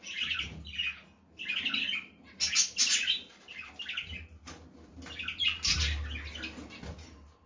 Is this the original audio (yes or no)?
yes